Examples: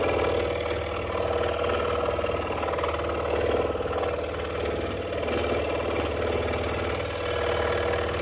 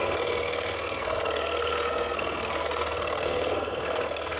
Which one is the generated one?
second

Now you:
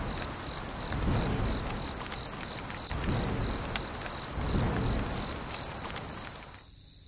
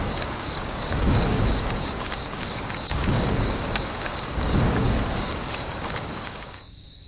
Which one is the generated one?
second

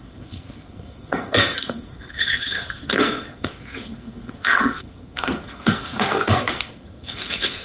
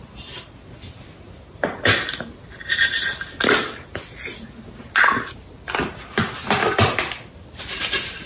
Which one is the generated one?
first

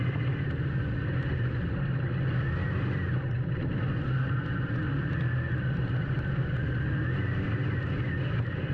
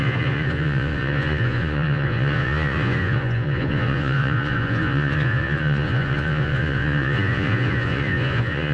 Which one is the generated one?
second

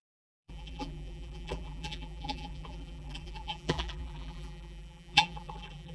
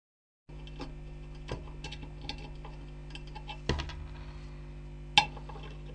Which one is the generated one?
first